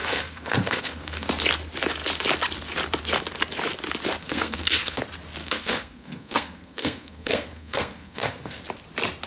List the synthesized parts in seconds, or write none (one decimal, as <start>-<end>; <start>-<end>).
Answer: 0.0-1.3; 4.2-5.0; 5.4-8.6